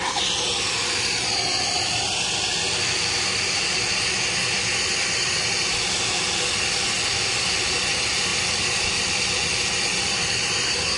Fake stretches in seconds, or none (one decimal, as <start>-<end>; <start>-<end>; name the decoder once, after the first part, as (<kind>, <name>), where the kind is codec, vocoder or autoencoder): none

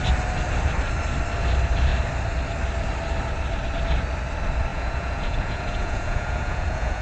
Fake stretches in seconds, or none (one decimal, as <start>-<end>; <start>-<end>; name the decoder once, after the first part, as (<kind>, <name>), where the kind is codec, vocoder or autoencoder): 4.7-7.0 (vocoder, Vocos)

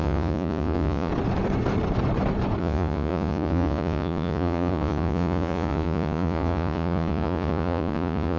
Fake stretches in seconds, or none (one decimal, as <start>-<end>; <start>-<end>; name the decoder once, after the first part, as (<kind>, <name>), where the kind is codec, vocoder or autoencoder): 0.0-1.1 (vocoder, Vocos); 2.6-8.4

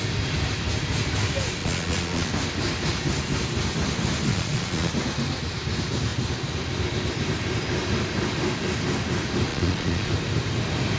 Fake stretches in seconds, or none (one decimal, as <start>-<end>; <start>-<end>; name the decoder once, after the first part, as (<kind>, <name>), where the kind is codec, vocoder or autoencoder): 1.6-2.3 (vocoder, Vocos); 4.3-4.9; 9.5-10.1